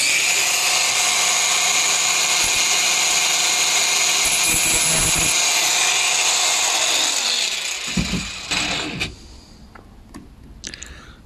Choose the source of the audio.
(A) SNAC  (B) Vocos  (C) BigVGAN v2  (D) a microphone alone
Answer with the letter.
D